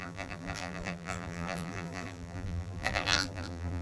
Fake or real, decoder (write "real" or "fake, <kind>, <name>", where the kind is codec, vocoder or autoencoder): fake, vocoder, BigVGAN v2